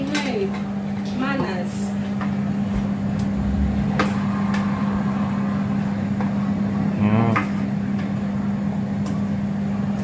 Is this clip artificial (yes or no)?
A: no